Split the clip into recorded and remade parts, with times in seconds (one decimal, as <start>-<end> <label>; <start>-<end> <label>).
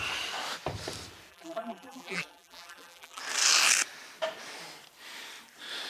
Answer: 0.0-1.3 recorded; 1.3-3.2 remade; 3.2-5.9 recorded